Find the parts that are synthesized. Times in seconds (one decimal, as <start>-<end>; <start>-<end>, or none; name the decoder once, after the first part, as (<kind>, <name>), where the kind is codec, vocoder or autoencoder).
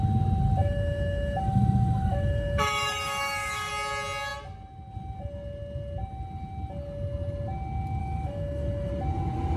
0.6-3.7 (autoencoder, DAC-VAE); 8.0-8.9